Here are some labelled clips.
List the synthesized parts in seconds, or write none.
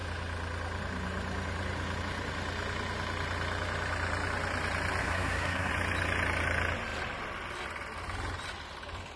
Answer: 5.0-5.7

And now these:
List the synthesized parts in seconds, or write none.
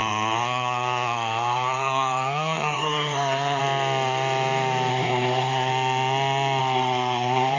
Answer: 0.0-3.6; 4.9-5.7; 6.6-7.6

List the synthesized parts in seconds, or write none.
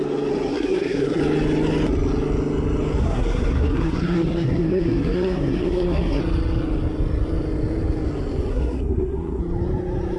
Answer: 0.5-1.2; 3.0-6.2; 8.5-9.4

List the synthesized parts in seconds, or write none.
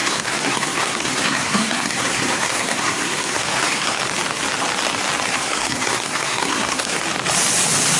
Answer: 0.0-4.0; 5.3-7.0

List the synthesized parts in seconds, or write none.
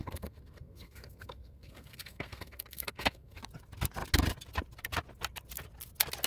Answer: 0.0-3.4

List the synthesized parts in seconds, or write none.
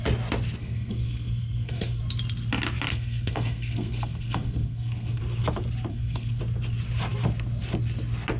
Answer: 0.6-2.0; 2.9-5.2; 5.9-6.4